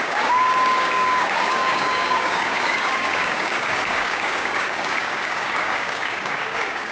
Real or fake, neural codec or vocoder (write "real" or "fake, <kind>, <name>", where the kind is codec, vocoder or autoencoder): fake, codec, DAC